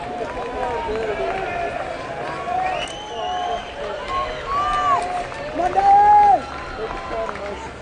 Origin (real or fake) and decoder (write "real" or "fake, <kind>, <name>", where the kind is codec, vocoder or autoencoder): real